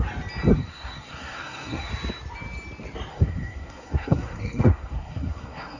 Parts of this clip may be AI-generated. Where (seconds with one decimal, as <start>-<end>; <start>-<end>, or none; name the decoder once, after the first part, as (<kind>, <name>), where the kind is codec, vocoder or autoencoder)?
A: 0.5-1.9 (codec, SNAC); 3.1-5.8